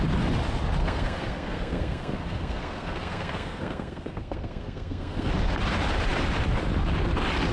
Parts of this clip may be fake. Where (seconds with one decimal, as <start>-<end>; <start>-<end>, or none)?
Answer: 0.8-5.3